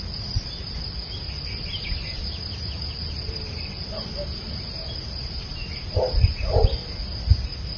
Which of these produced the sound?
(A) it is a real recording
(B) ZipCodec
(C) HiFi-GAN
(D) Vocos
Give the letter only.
A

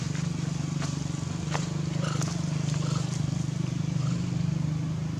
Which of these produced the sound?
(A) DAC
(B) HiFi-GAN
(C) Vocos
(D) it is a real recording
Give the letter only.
D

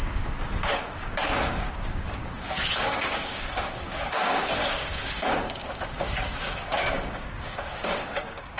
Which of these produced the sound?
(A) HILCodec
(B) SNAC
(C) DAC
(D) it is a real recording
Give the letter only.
C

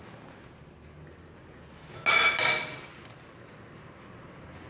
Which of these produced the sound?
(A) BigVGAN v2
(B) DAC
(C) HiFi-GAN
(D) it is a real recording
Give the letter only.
D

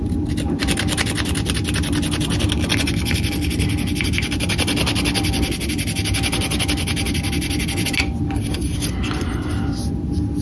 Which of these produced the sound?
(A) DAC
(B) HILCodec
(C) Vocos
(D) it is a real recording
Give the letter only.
D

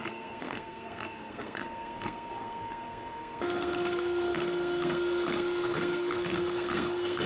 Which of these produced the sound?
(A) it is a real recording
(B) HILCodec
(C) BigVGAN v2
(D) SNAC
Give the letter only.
D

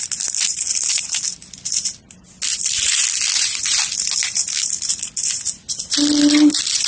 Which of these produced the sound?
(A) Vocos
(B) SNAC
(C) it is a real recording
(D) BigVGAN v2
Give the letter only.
C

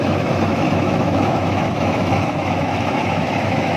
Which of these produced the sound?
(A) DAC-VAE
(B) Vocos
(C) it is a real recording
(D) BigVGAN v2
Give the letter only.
A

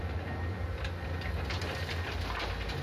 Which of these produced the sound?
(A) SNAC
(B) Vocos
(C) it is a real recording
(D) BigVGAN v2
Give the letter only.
C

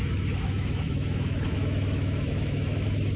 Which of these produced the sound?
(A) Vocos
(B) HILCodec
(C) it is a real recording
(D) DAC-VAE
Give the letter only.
D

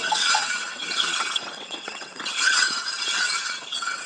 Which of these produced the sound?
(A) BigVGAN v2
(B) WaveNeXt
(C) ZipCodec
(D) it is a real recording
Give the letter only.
B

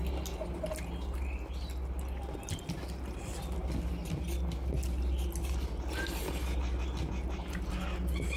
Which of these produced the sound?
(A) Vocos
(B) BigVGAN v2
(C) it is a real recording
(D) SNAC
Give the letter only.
C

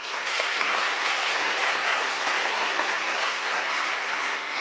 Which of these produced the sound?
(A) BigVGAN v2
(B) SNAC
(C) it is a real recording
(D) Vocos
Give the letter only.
B